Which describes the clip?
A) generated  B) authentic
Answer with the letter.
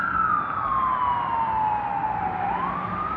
B